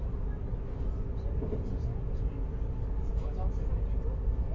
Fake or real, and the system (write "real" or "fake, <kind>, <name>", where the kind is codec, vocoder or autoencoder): real